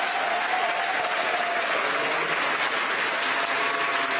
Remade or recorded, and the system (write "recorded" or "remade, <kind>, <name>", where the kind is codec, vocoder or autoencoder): recorded